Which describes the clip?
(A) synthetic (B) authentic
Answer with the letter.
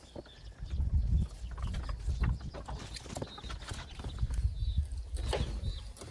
B